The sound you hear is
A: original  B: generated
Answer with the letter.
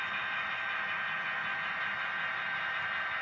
A